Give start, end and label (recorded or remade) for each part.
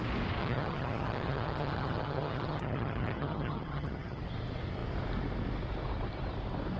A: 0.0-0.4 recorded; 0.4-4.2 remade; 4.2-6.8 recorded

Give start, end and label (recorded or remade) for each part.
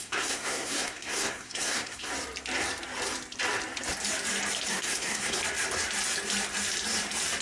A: 0.0-2.1 remade; 2.1-4.7 recorded; 4.7-5.4 remade; 5.4-7.4 recorded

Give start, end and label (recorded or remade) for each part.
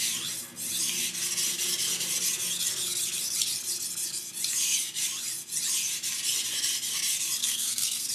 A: 0.0-7.4 recorded; 7.4-8.1 remade